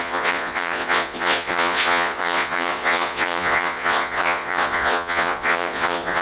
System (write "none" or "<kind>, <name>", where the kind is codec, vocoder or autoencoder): vocoder, Vocos